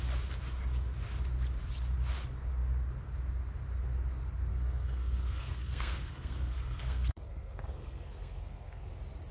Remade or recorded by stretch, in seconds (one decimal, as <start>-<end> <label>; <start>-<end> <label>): 0.0-4.5 recorded; 4.5-8.9 remade; 8.9-9.3 recorded